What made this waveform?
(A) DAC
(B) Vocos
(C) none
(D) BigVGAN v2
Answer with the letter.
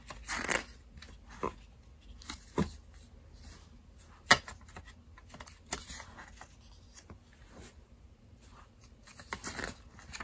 C